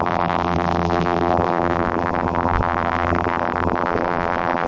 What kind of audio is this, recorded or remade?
remade